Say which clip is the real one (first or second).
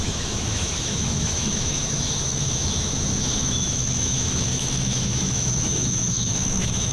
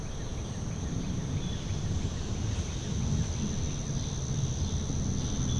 second